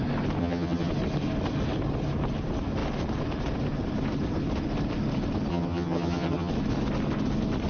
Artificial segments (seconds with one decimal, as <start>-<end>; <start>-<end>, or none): 0.4-0.9; 5.5-6.5